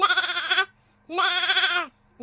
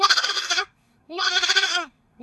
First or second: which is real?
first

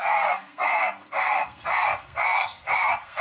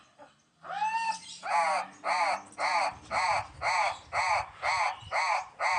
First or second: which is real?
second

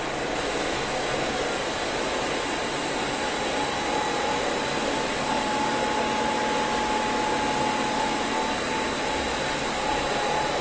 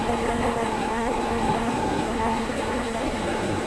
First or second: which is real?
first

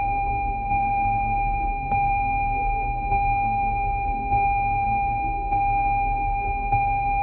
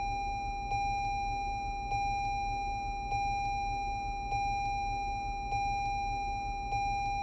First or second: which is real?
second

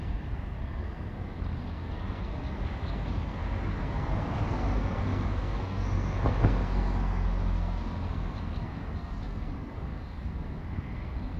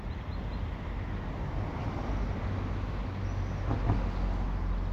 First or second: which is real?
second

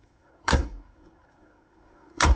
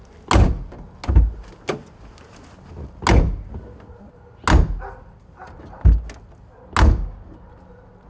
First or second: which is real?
second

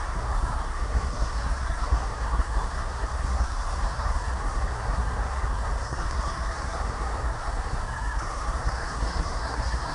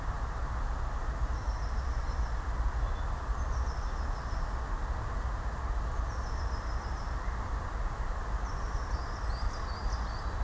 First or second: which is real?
second